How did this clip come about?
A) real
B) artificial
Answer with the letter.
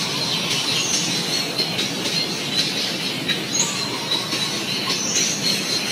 A